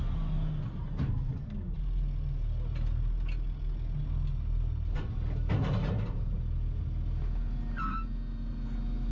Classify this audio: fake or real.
real